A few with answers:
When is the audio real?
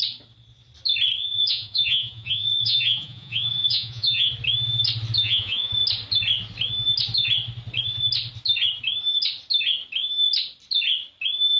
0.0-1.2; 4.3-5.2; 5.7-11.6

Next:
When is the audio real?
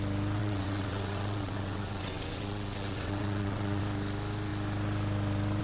0.0-0.4; 3.8-5.6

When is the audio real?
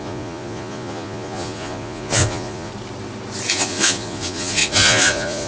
2.7-3.5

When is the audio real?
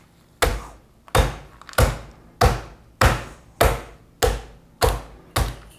0.0-5.8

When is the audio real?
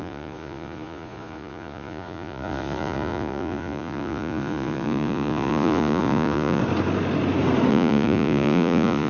6.6-7.7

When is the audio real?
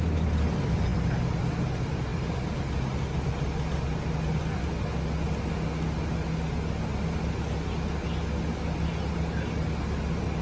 0.0-10.4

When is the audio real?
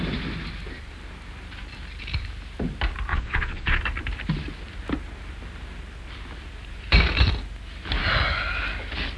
0.0-3.1; 3.8-9.2